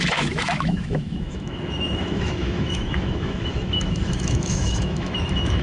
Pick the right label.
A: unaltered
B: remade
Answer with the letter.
B